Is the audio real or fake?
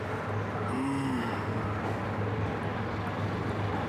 real